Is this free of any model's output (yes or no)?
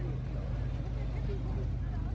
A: yes